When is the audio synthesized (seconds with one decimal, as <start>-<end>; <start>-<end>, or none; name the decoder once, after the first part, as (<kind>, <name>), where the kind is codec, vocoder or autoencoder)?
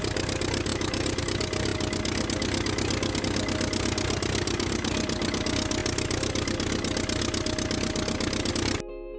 0.7-1.2 (vocoder, BigVGAN v2)